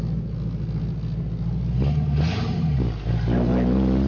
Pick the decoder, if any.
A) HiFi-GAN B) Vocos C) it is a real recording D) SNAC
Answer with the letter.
C